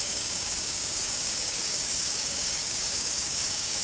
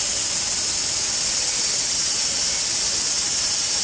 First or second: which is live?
second